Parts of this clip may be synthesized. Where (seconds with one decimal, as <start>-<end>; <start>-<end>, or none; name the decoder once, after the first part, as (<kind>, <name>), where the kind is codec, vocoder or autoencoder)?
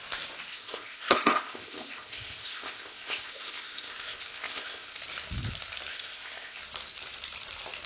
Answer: 0.5-5.0 (codec, ZipCodec); 5.9-6.6